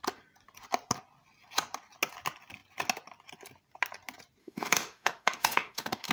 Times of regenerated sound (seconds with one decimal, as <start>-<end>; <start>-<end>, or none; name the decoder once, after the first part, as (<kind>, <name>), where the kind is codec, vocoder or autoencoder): 4.4-6.1 (autoencoder, DAC-VAE)